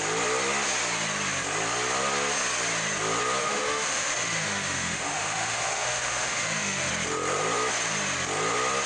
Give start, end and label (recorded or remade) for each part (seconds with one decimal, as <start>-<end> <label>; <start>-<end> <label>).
0.0-3.4 recorded; 3.4-6.9 remade; 6.9-8.9 recorded

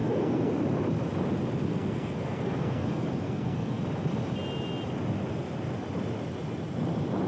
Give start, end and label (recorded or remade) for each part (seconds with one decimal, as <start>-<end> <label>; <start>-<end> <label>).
0.0-0.5 remade; 0.5-1.7 recorded; 1.7-3.8 remade; 3.8-7.3 recorded